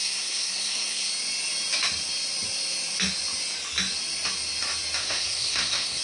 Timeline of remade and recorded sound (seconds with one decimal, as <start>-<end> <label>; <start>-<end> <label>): 0.0-1.1 remade; 1.1-5.0 recorded; 5.0-6.0 remade